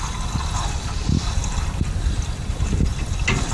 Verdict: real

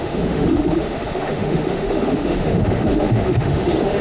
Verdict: fake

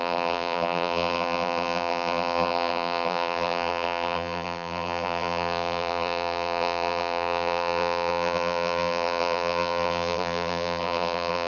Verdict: fake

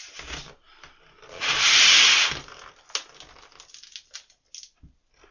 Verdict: real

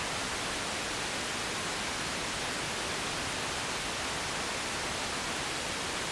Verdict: real